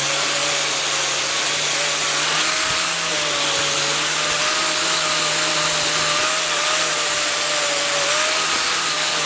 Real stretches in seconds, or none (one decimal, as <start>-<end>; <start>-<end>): 0.0-9.3